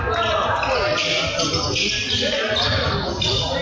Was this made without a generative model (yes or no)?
yes